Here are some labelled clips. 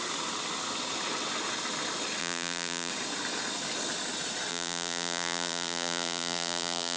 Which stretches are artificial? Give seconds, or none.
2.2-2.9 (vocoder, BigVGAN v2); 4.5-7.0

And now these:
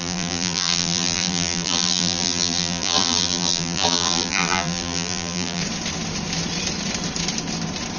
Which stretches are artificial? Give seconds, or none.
0.0-5.6 (vocoder, BigVGAN v2)

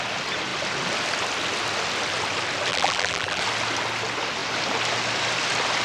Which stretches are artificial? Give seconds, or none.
2.7-3.4 (vocoder, BigVGAN v2)

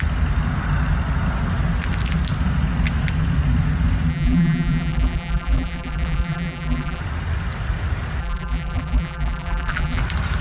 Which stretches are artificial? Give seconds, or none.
4.1-7.0 (vocoder, BigVGAN v2); 8.2-10.0

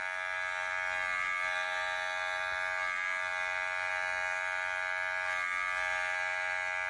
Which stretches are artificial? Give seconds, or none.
none

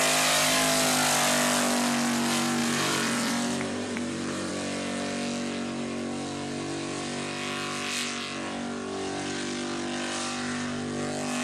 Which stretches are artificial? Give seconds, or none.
2.6-4.5 (vocoder, BigVGAN v2)

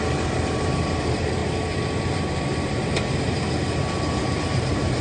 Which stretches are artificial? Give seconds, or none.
0.0-1.4 (vocoder, BigVGAN v2); 4.2-5.0

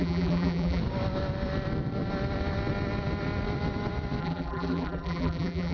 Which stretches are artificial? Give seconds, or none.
0.0-0.8 (vocoder, BigVGAN v2); 4.2-5.7